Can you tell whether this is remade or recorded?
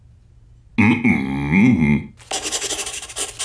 recorded